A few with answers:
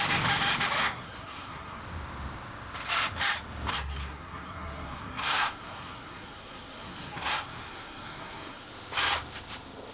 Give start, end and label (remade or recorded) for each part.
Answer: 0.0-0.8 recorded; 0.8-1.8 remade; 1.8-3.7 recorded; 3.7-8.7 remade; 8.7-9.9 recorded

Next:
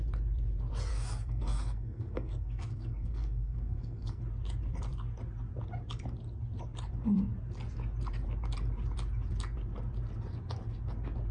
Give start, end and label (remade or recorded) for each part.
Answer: 0.0-0.9 recorded; 0.9-4.2 remade; 4.2-11.3 recorded